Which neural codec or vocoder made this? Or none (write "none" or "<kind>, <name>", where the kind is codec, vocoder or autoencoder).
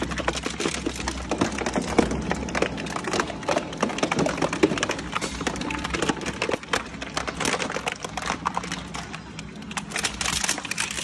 none